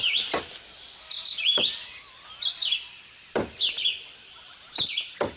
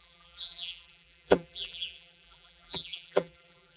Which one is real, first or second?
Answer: first